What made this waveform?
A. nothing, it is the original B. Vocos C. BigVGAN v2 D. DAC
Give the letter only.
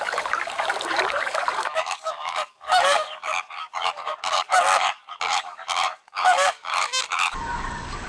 D